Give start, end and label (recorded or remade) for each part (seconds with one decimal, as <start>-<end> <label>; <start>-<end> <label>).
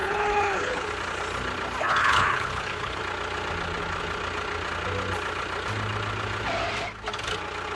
0.0-0.9 remade; 0.9-2.0 recorded; 2.0-3.0 remade; 3.0-7.8 recorded